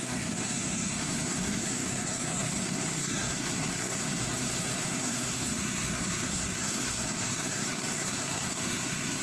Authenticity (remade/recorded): remade